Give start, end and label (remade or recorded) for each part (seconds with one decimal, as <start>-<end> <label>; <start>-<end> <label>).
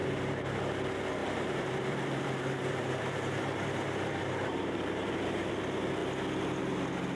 0.0-0.6 remade; 0.6-1.2 recorded; 1.2-5.5 remade; 5.5-7.2 recorded